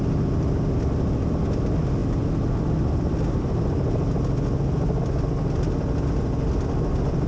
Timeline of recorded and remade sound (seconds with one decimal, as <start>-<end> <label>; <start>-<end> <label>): 0.0-7.3 recorded